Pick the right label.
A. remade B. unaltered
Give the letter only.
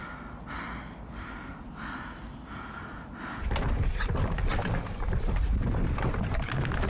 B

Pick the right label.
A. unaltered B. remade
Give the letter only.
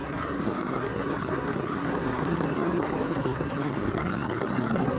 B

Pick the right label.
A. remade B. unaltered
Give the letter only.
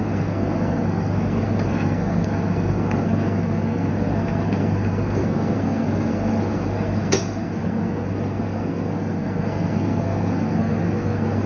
A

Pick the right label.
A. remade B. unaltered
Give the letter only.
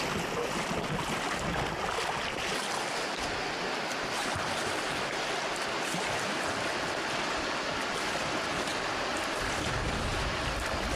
B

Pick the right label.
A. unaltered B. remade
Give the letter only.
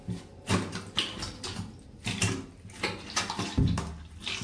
A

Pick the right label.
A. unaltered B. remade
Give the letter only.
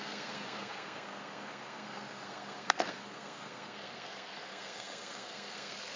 B